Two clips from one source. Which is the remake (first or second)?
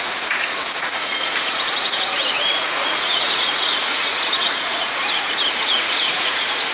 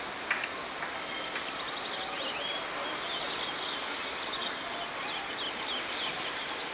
first